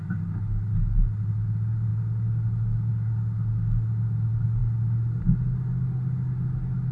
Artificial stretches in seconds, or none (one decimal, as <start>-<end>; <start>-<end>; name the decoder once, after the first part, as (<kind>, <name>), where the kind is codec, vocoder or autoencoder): none